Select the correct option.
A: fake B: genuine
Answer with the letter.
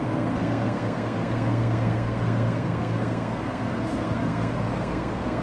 A